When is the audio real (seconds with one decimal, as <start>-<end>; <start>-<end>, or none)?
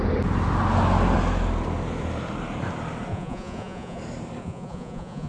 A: 0.0-3.1; 4.0-4.4